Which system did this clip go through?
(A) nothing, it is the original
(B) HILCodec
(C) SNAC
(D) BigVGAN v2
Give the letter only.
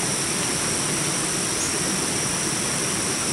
A